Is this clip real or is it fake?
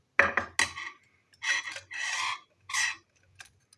real